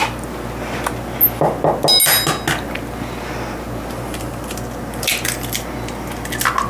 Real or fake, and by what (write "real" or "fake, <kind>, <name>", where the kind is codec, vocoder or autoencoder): real